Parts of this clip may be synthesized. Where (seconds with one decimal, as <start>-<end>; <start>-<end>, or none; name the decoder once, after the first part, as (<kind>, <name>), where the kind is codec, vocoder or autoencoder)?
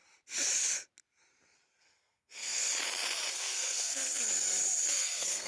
1.8-2.7 (codec, SNAC); 3.3-4.2; 4.9-5.5